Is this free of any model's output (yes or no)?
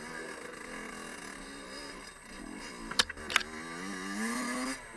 yes